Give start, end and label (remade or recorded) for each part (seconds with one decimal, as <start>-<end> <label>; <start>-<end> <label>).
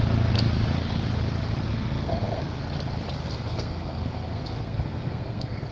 0.0-1.7 recorded; 1.7-2.6 remade; 2.6-3.2 recorded; 3.2-5.7 remade